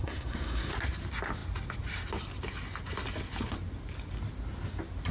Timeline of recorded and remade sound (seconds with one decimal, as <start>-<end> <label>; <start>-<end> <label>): 0.0-0.7 remade; 0.7-5.1 recorded